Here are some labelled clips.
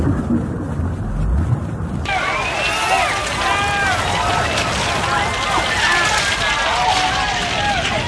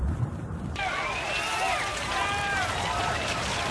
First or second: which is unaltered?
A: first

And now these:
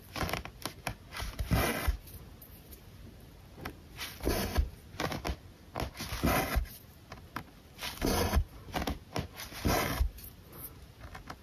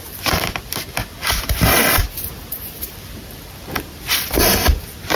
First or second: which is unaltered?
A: first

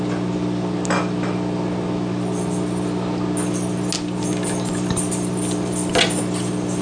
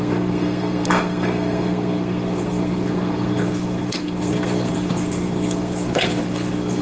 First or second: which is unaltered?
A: first